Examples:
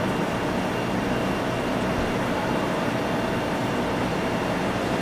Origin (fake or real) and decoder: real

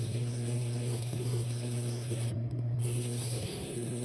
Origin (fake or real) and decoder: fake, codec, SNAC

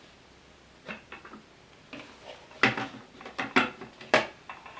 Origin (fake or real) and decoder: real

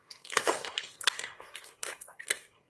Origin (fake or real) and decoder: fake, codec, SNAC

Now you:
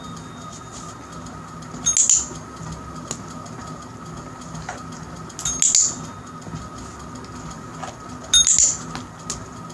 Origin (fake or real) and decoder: real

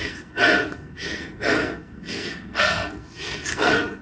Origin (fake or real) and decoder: fake, codec, SNAC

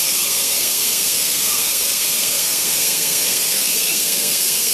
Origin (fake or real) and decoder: fake, codec, SNAC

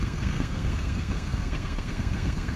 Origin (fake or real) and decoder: fake, codec, SNAC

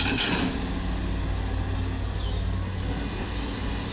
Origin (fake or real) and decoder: real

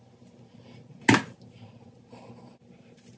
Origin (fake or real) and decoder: real